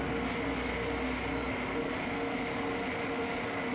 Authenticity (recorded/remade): recorded